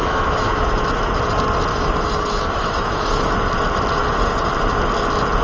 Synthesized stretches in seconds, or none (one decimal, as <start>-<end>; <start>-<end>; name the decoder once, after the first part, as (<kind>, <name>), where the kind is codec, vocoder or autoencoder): 0.0-1.2 (autoencoder, DAC-VAE); 1.7-3.4